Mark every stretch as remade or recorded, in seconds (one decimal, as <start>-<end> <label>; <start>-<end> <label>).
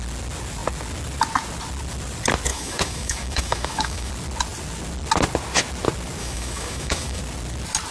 0.0-2.5 recorded; 2.5-4.1 remade; 4.1-6.2 recorded; 6.2-7.2 remade; 7.2-7.9 recorded